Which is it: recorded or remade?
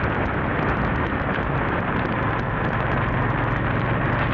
recorded